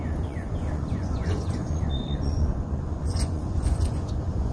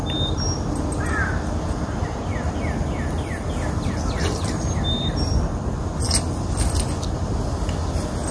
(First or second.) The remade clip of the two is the first